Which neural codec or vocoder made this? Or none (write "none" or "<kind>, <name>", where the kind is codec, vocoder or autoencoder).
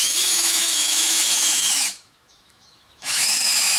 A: autoencoder, DAC-VAE